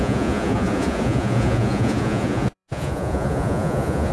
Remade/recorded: remade